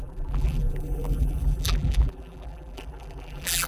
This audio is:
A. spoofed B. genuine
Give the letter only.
A